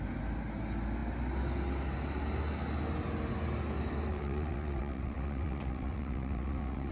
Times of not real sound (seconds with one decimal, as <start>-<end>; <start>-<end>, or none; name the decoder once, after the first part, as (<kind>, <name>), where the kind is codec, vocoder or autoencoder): 4.1-6.9 (vocoder, WaveNeXt)